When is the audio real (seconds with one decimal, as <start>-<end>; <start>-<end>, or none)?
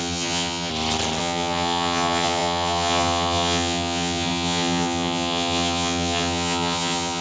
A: 0.7-1.2